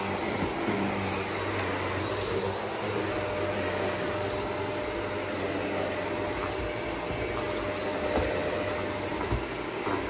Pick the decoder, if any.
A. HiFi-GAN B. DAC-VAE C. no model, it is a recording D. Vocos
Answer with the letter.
C